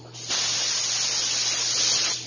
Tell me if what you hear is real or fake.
real